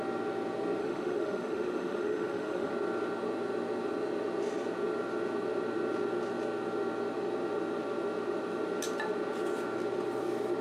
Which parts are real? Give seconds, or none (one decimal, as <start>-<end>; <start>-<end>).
0.0-0.8; 2.7-10.6